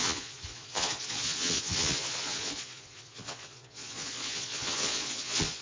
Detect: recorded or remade remade